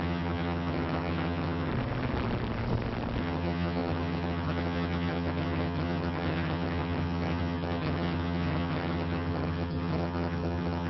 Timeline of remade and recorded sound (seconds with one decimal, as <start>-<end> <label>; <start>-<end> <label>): 0.0-1.7 remade; 1.7-3.2 recorded; 3.2-10.9 remade